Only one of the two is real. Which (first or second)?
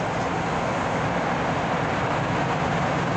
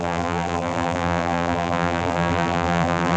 first